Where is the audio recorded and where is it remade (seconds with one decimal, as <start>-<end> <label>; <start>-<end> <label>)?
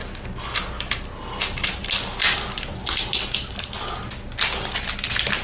0.0-5.4 recorded